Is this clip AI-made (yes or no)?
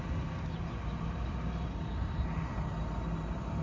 no